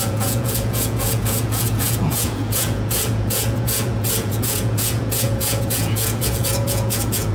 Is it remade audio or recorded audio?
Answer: remade